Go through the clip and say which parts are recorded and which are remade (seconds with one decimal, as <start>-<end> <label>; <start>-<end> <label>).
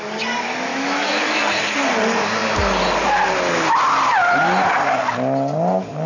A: 0.0-0.7 recorded; 0.7-1.4 remade; 1.4-6.1 recorded